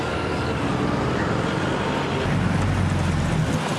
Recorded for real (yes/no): yes